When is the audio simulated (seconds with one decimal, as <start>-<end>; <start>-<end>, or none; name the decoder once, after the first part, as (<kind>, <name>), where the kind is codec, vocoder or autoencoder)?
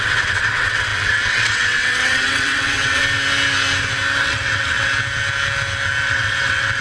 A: 0.0-3.0 (vocoder, WaveNeXt); 4.2-4.9; 6.0-6.8